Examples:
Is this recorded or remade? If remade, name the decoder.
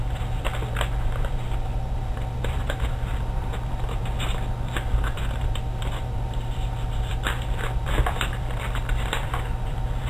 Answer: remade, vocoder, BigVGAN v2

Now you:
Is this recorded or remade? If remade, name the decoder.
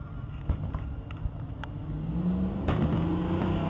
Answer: recorded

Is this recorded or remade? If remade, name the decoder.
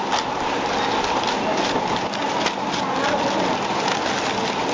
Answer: recorded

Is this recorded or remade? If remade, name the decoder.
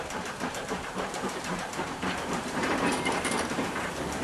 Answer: remade, vocoder, BigVGAN v2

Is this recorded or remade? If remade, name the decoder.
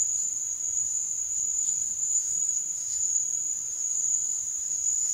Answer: remade, vocoder, BigVGAN v2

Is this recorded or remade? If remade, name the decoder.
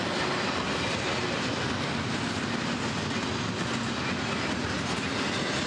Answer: recorded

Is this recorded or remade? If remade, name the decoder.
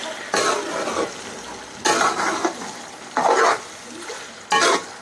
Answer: recorded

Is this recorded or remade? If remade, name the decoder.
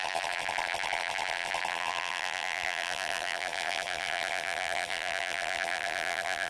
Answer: remade, vocoder, BigVGAN v2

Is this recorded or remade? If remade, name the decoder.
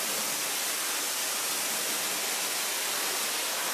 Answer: recorded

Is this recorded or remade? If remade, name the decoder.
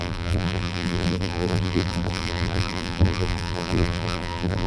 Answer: remade, vocoder, BigVGAN v2